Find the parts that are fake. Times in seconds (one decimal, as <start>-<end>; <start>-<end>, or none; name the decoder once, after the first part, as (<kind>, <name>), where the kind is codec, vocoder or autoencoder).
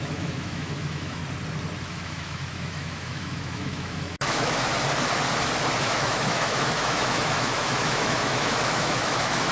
0.0-1.2 (autoencoder, DAC-VAE); 1.8-4.7; 5.8-9.5